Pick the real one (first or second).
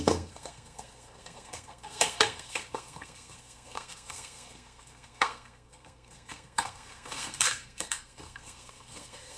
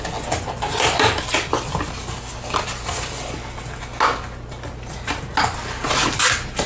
second